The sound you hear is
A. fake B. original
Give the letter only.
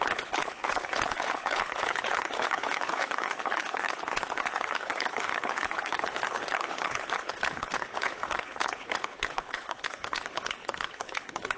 A